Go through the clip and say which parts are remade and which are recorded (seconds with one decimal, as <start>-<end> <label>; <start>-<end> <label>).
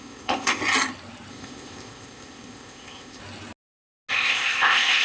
0.0-0.6 remade; 0.6-1.3 recorded; 1.3-3.2 remade; 3.2-4.1 recorded; 4.1-5.0 remade